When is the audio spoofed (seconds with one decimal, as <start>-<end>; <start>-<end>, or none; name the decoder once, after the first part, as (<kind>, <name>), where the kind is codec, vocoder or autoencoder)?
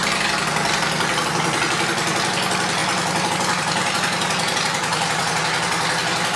3.8-5.2 (vocoder, BigVGAN v2)